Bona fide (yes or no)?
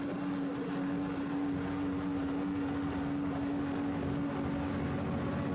yes